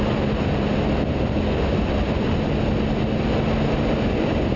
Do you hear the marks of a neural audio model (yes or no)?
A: no